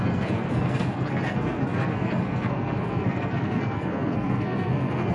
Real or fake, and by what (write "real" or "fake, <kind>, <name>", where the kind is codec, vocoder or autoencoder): fake, codec, SNAC